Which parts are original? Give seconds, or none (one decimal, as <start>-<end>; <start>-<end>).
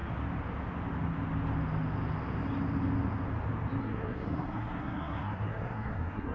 0.0-3.8